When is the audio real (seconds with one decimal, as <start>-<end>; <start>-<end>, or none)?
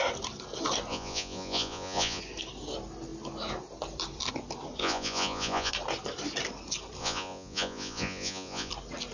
0.0-0.9; 2.2-4.8; 5.7-7.0; 8.7-9.1